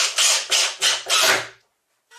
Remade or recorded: recorded